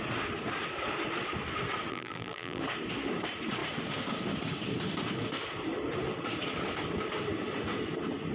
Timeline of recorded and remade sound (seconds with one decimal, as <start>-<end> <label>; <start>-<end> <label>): 0.0-1.9 recorded; 1.9-2.6 remade; 2.6-8.3 recorded